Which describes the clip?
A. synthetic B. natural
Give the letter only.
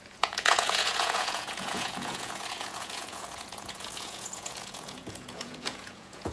A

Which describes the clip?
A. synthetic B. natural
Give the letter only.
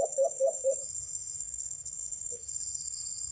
A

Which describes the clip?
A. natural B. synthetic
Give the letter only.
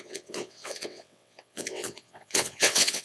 B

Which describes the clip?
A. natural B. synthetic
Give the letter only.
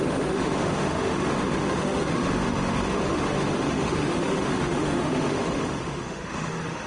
B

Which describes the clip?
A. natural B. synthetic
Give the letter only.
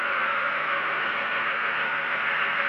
B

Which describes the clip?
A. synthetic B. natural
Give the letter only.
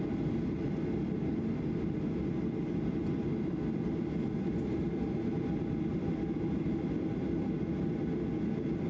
B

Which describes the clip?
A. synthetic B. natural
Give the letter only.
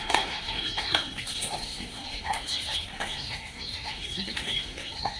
A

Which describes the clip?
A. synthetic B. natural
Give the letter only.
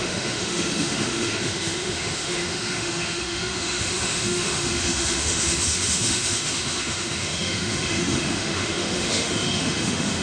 A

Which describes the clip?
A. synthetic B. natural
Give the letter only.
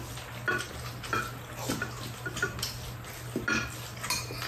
B